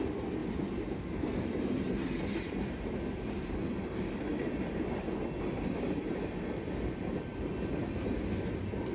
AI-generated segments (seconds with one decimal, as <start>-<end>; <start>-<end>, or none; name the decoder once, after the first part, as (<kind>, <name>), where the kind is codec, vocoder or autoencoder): none